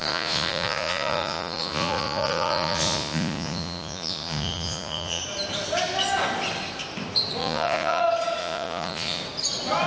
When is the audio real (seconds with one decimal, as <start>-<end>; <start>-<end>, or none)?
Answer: 5.2-7.4; 8.0-8.4; 9.2-9.9